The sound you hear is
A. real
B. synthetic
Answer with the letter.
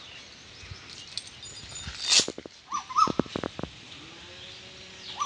A